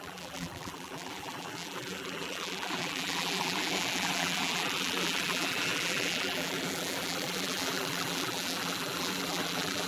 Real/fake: fake